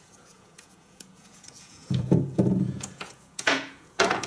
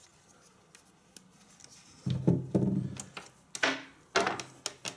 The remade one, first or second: first